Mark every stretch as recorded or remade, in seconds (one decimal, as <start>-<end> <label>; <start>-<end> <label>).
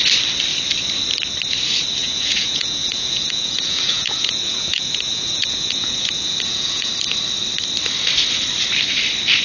0.0-2.0 recorded; 2.0-6.9 remade; 6.9-9.4 recorded